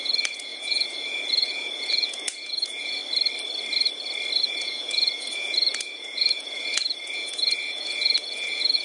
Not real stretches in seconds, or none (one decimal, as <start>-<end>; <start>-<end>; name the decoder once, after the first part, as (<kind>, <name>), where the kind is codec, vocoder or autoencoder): 0.0-3.0 (vocoder, Vocos); 4.4-8.8